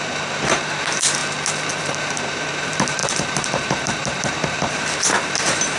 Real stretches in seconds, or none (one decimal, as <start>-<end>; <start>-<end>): 1.2-1.8